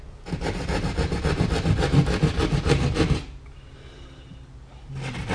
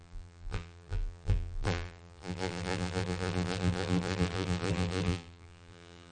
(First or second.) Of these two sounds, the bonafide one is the first